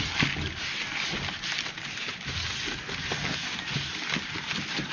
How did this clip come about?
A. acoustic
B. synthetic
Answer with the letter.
A